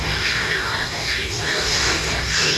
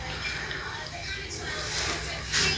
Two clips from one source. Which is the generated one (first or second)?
first